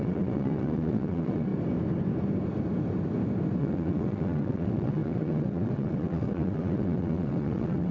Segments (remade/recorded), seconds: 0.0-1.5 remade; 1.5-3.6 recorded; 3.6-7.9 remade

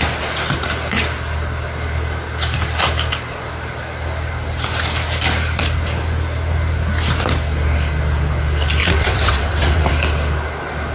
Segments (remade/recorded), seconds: 0.0-8.8 recorded; 8.8-9.9 remade; 9.9-10.9 recorded

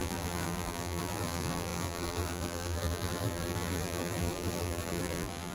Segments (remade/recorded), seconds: 0.0-5.5 remade

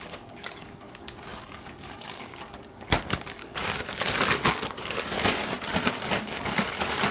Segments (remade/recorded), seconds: 0.0-5.4 remade; 5.4-6.0 recorded; 6.0-7.1 remade

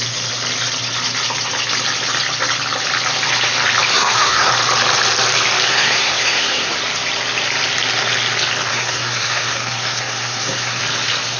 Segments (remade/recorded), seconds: 0.0-3.9 recorded; 3.9-4.5 remade; 4.5-5.7 recorded; 5.7-6.7 remade; 6.7-8.7 recorded; 8.7-10.8 remade; 10.8-11.4 recorded

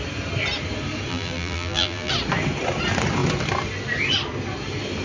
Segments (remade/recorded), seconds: 0.0-1.1 recorded; 1.1-2.1 remade; 2.1-5.0 recorded

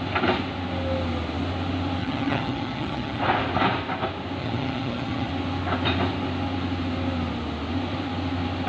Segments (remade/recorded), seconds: 0.0-2.0 recorded; 2.0-3.2 remade; 3.2-4.4 recorded; 4.4-5.3 remade; 5.3-8.7 recorded